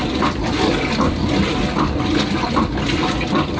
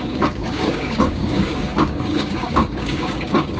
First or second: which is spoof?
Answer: second